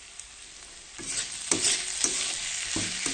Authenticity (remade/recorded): recorded